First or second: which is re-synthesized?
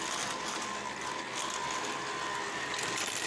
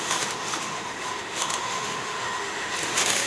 second